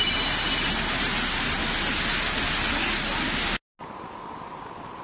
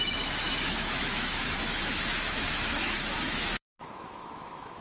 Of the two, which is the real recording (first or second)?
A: first